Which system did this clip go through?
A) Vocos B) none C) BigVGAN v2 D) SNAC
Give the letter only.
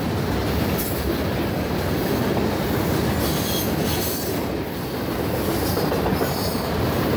B